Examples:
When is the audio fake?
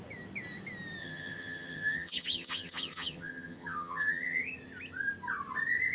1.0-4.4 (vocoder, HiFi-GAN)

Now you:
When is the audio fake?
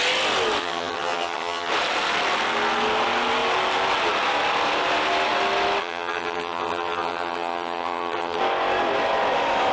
0.6-1.7 (vocoder, HiFi-GAN); 5.8-8.4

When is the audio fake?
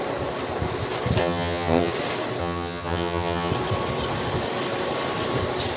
1.2-1.9 (vocoder, HiFi-GAN); 2.4-3.5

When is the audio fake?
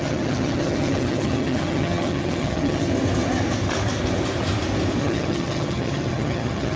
0.0-2.9 (vocoder, HiFi-GAN); 5.0-6.8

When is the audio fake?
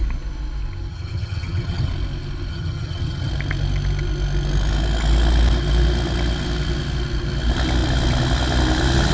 0.9-1.9 (vocoder, HiFi-GAN); 2.5-3.3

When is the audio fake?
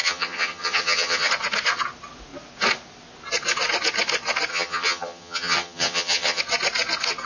0.0-1.3 (vocoder, HiFi-GAN); 4.5-6.4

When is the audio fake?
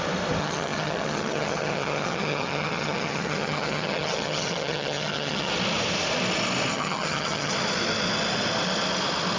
0.4-5.5 (vocoder, HiFi-GAN); 6.7-7.5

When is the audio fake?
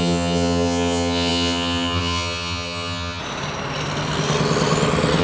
0.0-3.2 (vocoder, HiFi-GAN)